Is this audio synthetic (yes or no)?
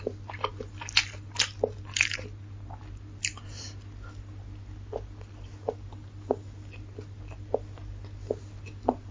no